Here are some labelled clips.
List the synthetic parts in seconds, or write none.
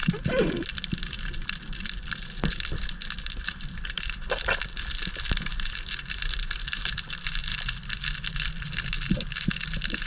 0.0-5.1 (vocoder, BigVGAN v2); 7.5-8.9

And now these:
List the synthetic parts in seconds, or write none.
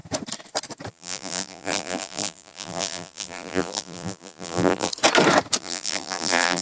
0.9-4.9 (vocoder, BigVGAN v2); 5.6-6.6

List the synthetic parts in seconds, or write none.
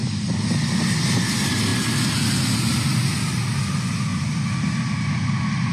none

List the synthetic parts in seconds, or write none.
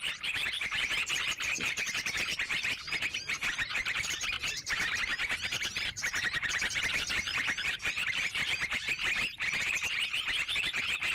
0.0-11.1 (vocoder, BigVGAN v2)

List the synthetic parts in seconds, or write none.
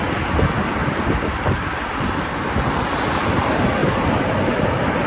0.8-2.3 (vocoder, BigVGAN v2); 3.8-5.1